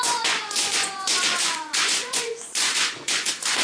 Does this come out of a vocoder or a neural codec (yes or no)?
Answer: yes